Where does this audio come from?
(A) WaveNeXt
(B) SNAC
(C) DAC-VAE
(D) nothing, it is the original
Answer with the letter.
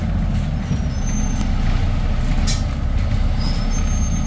D